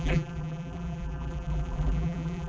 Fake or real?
fake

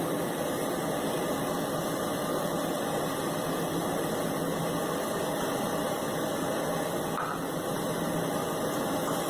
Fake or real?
real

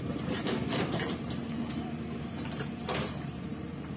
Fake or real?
fake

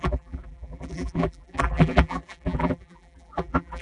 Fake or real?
fake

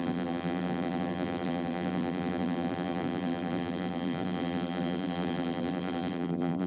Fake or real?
fake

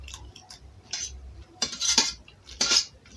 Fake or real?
fake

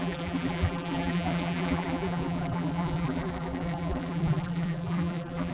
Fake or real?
fake